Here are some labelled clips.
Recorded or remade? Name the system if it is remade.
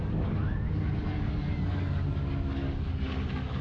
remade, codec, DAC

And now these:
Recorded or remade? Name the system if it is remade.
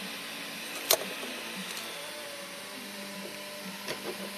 recorded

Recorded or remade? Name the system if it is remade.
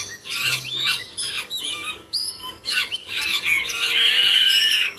remade, codec, DAC